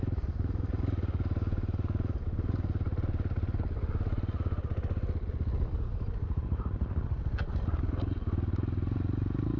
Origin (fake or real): real